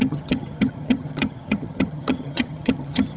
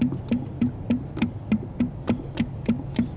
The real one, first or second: second